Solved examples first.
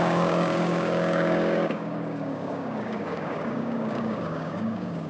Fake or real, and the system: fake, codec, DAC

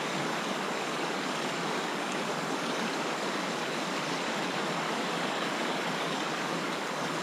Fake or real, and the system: fake, codec, DAC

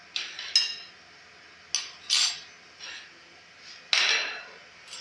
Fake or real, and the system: real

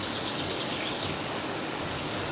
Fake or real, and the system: fake, codec, DAC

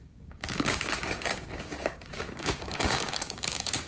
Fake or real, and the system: fake, codec, DAC